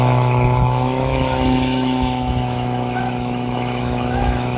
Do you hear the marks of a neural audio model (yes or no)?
yes